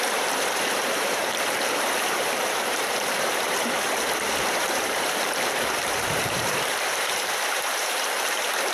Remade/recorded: remade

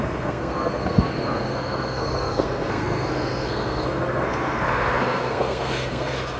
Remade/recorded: remade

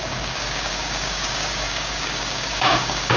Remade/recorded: remade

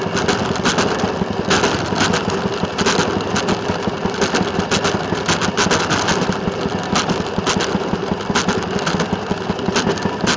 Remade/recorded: recorded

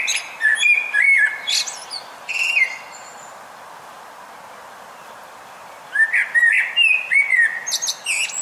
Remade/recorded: recorded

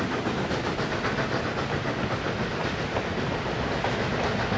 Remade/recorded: recorded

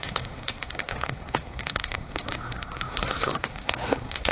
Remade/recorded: remade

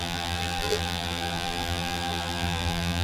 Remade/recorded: remade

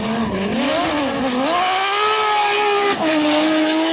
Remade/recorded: recorded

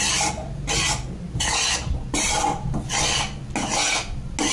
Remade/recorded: recorded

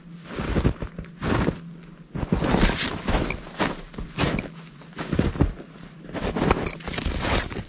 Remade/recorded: recorded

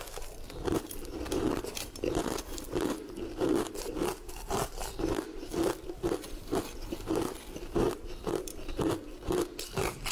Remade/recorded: remade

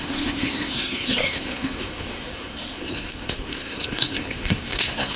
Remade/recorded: remade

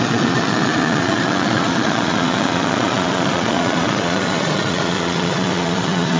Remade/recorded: remade